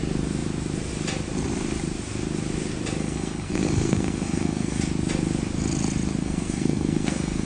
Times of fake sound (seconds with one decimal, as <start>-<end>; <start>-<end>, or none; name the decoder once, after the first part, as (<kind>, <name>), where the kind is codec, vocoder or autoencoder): 3.0-4.8 (codec, SNAC); 6.2-7.5